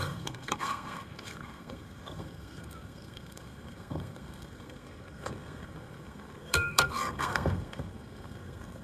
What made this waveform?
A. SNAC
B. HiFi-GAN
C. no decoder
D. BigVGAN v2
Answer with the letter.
A